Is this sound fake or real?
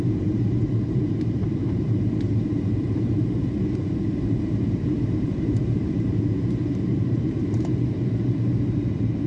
fake